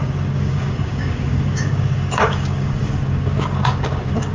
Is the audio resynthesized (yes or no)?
yes